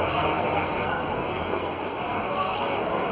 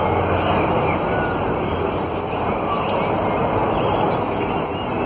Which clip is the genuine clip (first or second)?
second